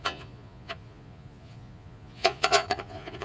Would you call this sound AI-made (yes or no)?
yes